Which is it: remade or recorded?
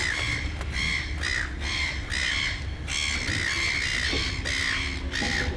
recorded